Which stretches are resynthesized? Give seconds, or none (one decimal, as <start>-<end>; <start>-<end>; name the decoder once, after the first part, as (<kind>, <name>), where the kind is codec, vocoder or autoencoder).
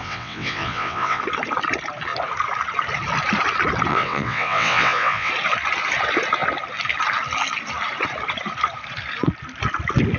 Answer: 0.0-1.2 (vocoder, WaveNeXt); 3.9-5.3